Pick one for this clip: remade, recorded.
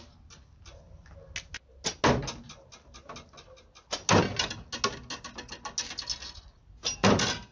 recorded